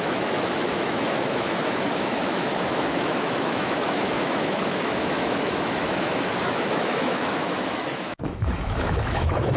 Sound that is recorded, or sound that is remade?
remade